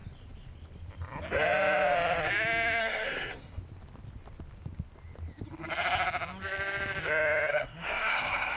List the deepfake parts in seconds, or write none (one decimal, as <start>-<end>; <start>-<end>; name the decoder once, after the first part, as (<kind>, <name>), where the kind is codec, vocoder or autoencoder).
2.8-3.6 (codec, SNAC); 7.5-8.6